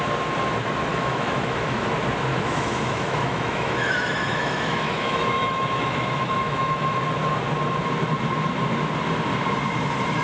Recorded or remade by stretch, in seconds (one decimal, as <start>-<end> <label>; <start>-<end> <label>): 0.0-0.9 recorded; 0.9-1.9 remade; 1.9-2.3 recorded; 2.3-7.0 remade; 7.0-10.2 recorded